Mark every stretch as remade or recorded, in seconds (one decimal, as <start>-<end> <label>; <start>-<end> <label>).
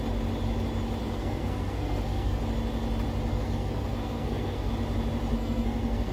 0.0-1.0 recorded; 1.0-2.4 remade; 2.4-3.3 recorded; 3.3-4.7 remade; 4.7-5.3 recorded; 5.3-6.1 remade